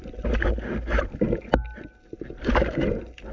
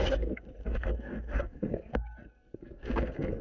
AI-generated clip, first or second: second